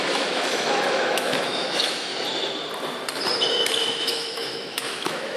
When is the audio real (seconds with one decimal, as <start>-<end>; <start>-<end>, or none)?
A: 2.1-3.5